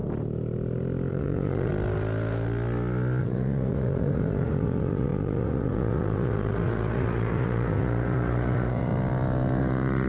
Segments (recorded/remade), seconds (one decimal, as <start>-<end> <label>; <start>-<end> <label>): 0.0-1.1 recorded; 1.1-1.7 remade; 1.7-3.2 recorded; 3.2-8.9 remade; 8.9-9.6 recorded; 9.6-10.1 remade

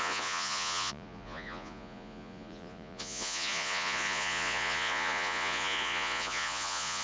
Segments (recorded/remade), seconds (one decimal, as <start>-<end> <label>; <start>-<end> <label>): 0.0-7.0 remade

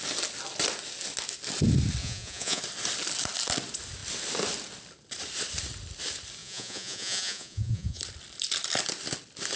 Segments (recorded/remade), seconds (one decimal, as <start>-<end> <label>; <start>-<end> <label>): 0.0-2.0 recorded; 2.0-2.6 remade; 2.6-6.4 recorded; 6.4-8.0 remade; 8.0-9.6 recorded

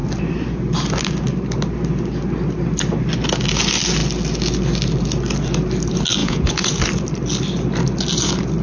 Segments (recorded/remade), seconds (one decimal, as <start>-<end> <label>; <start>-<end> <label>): 0.0-6.2 recorded; 6.2-6.7 remade; 6.7-8.6 recorded

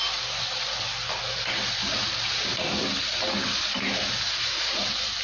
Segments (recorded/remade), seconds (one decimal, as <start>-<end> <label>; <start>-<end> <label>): 0.0-5.2 recorded

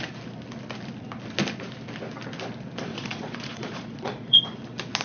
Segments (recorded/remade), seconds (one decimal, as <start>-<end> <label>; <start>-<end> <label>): 0.0-2.9 recorded; 2.9-4.4 remade; 4.4-5.0 recorded